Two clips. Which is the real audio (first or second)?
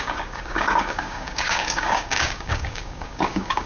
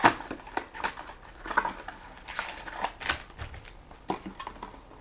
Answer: second